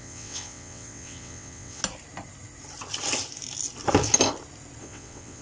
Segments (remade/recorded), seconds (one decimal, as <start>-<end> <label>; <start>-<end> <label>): 0.0-1.8 remade; 1.8-4.8 recorded; 4.8-5.4 remade